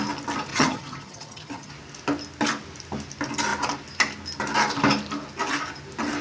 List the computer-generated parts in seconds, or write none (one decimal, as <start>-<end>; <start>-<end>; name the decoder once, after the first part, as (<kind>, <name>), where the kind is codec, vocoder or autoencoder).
0.5-1.7 (vocoder, HiFi-GAN)